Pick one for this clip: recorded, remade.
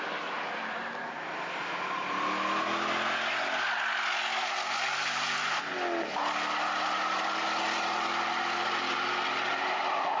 recorded